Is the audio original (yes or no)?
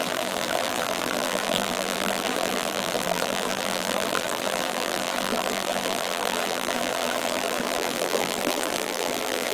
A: no